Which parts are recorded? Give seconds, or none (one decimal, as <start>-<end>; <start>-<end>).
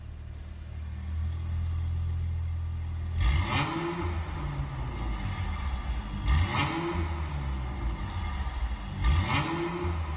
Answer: 0.0-10.2